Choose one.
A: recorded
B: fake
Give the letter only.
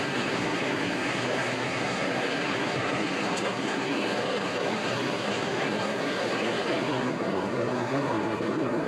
B